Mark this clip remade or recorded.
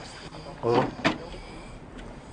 remade